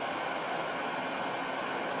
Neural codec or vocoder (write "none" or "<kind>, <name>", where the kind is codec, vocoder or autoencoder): none